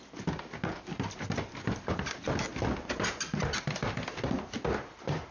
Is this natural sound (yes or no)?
yes